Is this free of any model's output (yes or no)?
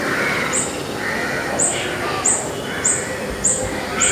yes